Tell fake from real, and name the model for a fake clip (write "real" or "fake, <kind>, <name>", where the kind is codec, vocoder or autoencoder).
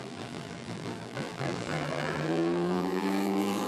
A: fake, vocoder, BigVGAN v2